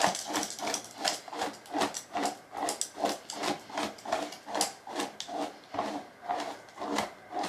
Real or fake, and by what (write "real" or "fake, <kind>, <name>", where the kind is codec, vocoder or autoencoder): real